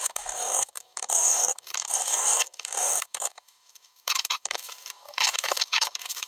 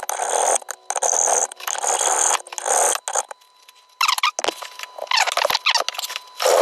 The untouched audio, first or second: second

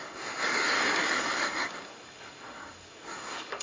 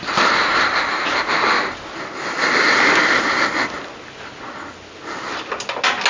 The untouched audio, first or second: second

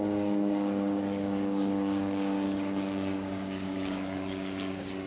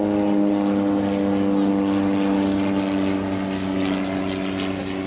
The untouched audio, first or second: second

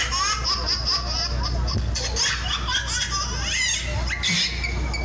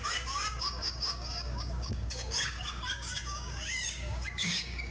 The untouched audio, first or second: first